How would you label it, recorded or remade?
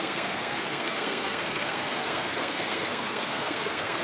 remade